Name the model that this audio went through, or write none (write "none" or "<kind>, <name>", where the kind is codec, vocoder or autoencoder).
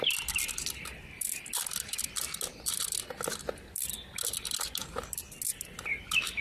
none